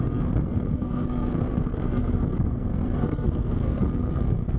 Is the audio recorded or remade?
remade